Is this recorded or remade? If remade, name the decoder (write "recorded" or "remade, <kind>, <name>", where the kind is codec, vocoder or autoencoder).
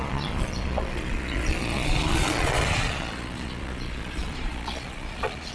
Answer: remade, vocoder, Vocos